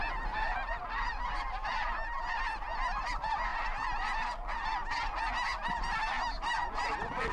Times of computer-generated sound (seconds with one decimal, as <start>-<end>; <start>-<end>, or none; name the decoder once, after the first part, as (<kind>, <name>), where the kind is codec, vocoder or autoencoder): none